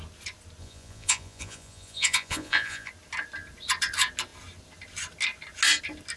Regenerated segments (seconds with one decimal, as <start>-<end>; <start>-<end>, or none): 0.6-2.9